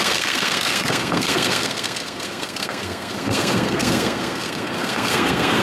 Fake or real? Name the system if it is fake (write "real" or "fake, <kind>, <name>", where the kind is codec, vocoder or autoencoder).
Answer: fake, codec, SNAC